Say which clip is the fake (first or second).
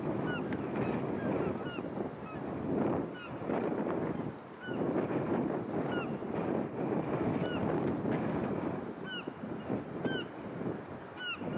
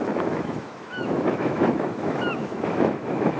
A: second